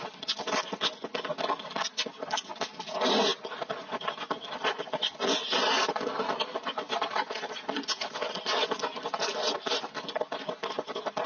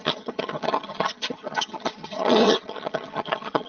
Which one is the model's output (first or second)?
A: second